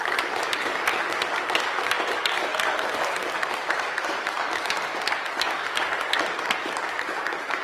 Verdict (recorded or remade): remade